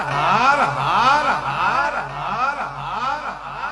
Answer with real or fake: real